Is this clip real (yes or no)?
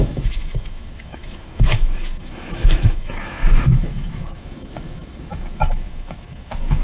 no